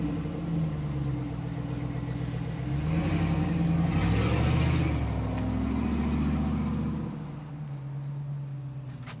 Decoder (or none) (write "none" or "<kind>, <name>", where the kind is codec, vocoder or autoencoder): none